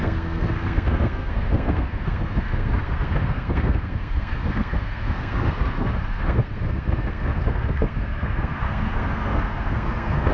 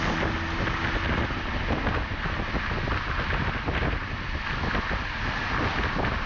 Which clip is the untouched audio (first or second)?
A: second